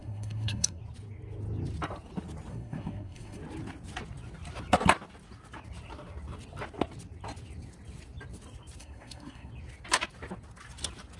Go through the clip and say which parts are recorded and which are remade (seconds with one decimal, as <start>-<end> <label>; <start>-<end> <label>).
0.0-0.8 remade; 0.8-2.5 recorded; 2.5-3.4 remade; 3.4-8.8 recorded; 8.8-9.5 remade; 9.5-11.2 recorded